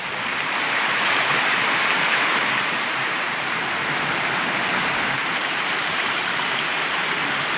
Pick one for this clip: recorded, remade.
remade